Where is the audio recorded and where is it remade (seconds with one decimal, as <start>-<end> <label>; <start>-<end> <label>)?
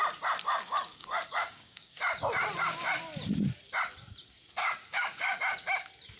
0.0-0.9 recorded; 0.9-1.9 remade; 1.9-4.6 recorded; 4.6-5.4 remade; 5.4-6.2 recorded